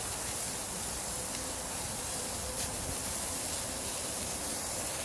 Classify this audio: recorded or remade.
remade